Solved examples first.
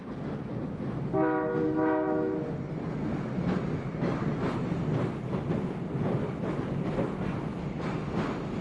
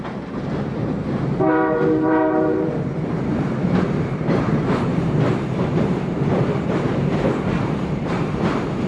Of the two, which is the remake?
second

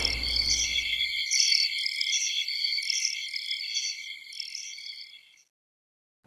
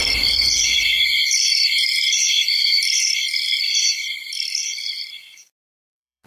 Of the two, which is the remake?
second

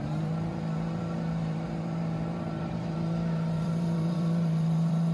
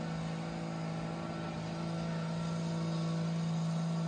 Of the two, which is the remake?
first